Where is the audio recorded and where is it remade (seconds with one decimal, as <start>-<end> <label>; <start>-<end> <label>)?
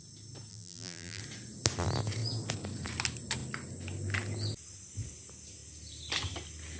0.0-0.5 recorded; 0.5-1.2 remade; 1.2-6.8 recorded